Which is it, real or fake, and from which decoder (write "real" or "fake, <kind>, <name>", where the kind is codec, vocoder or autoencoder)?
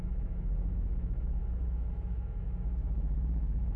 fake, autoencoder, DAC-VAE